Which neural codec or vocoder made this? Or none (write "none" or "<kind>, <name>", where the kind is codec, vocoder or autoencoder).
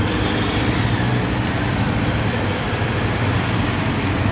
none